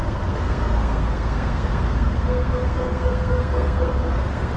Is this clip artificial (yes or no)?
yes